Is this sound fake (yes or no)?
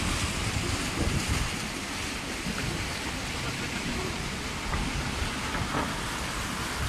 no